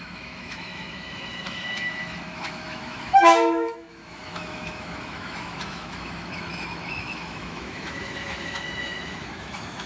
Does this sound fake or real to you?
fake